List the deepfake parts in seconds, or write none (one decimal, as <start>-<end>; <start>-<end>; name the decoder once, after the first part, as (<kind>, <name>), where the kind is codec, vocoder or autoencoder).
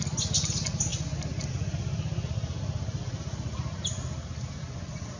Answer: none